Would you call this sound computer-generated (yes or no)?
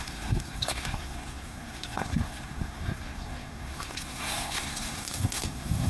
yes